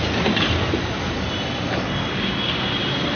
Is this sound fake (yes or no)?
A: no